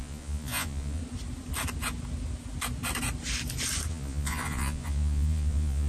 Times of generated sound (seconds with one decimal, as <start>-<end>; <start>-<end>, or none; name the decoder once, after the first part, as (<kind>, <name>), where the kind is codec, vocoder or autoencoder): 0.0-1.0 (vocoder, Vocos); 3.9-5.9